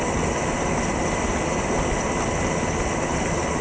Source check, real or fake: real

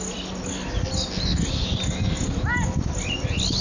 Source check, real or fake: real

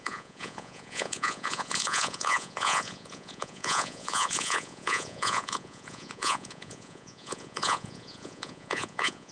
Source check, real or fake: fake